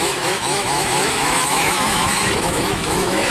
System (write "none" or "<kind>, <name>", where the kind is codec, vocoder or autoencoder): autoencoder, DAC-VAE